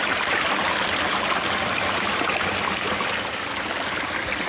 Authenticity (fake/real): fake